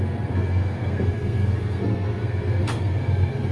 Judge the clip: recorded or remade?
remade